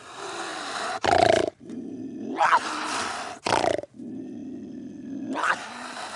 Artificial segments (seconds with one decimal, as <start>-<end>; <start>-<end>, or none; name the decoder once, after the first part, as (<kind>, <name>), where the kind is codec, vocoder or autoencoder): 0.5-1.9 (vocoder, BigVGAN v2)